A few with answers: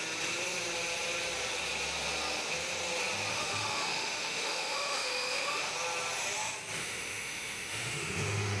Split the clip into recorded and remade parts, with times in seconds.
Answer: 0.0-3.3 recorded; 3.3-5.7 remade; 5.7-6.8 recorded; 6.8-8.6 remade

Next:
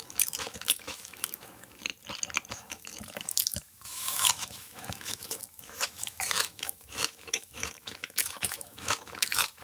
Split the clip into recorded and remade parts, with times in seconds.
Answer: 0.0-1.9 remade; 1.9-2.5 recorded; 2.5-9.6 remade

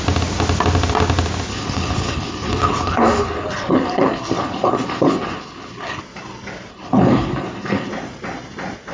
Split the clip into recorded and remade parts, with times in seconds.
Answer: 0.0-1.5 recorded; 1.5-6.0 remade; 6.0-6.7 recorded; 6.7-7.9 remade; 7.9-8.9 recorded

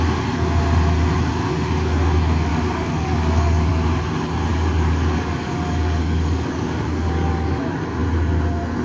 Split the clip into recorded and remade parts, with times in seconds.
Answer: 0.0-2.5 recorded; 2.5-3.7 remade; 3.7-4.5 recorded; 4.5-7.6 remade; 7.6-8.8 recorded

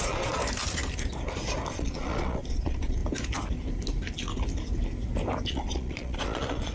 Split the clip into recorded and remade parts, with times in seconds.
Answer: 0.0-0.4 remade; 0.4-1.7 recorded; 1.7-3.0 remade; 3.0-5.5 recorded; 5.5-6.7 remade

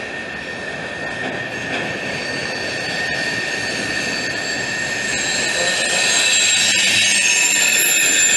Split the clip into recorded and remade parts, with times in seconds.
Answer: 0.0-8.4 recorded